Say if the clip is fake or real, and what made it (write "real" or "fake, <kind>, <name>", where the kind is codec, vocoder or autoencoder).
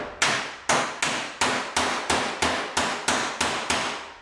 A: real